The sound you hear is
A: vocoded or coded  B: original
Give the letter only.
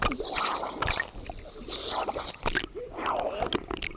B